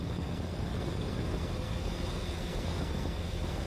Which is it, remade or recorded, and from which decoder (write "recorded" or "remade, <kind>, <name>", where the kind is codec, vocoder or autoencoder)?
remade, codec, SNAC